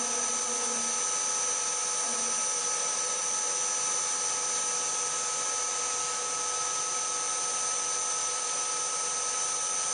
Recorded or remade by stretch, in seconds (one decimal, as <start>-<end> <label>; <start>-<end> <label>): 0.0-2.6 recorded; 2.6-3.2 remade; 3.2-8.2 recorded; 8.2-8.7 remade; 8.7-9.9 recorded